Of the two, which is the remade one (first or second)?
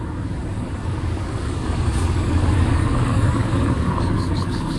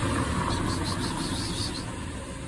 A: first